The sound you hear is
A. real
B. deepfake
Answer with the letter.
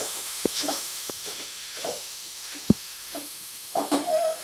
B